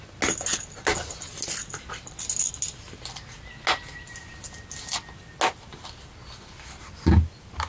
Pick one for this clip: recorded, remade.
recorded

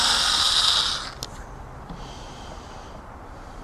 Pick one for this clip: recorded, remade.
recorded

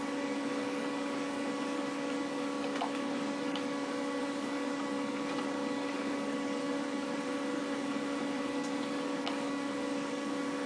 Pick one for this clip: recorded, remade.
remade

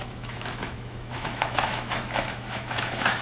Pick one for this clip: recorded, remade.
remade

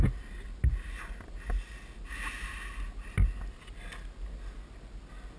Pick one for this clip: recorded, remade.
recorded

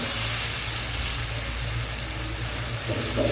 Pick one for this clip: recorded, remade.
recorded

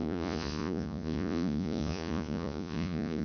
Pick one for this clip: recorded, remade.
remade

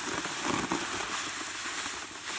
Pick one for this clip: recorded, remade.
recorded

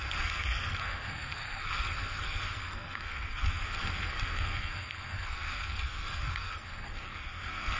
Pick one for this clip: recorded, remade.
remade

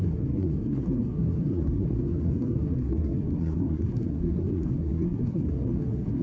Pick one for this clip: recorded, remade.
remade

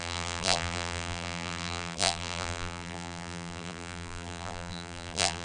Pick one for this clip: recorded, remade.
remade